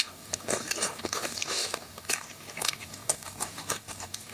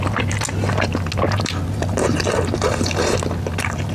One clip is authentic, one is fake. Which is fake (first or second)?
first